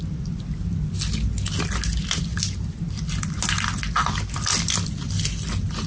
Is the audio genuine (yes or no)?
yes